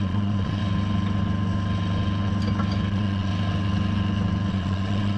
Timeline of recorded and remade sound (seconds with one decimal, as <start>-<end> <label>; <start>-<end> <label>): 0.0-0.6 remade; 0.6-2.9 recorded; 2.9-3.3 remade; 3.3-4.5 recorded; 4.5-5.2 remade